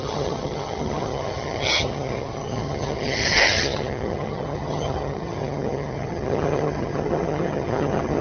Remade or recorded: remade